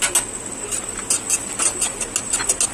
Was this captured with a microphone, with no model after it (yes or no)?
yes